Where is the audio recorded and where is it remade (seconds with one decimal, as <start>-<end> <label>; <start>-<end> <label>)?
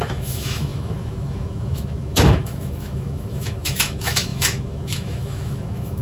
0.0-6.0 remade